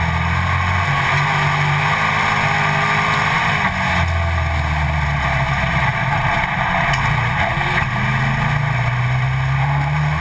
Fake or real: real